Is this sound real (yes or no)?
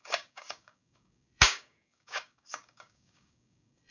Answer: no